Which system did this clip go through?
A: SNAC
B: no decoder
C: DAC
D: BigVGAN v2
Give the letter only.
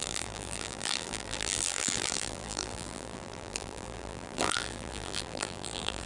D